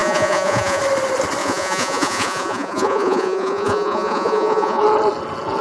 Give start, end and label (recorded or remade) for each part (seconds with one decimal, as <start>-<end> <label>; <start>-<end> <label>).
0.0-0.8 remade; 0.8-1.4 recorded; 1.4-4.8 remade; 4.8-5.6 recorded